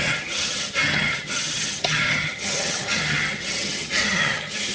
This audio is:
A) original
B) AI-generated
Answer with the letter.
B